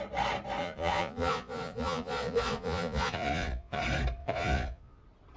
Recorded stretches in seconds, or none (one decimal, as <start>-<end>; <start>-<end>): 0.0-0.6; 3.8-4.2; 5.0-5.4